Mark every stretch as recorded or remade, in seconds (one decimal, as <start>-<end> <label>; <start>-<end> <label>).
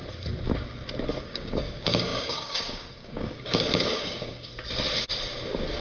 0.0-1.2 recorded; 1.2-4.5 remade; 4.5-5.8 recorded